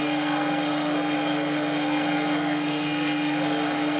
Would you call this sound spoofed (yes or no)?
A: yes